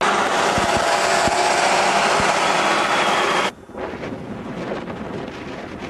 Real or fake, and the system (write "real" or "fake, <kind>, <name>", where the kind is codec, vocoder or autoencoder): real